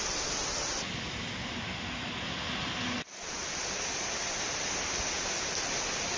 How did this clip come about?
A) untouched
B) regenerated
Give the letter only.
A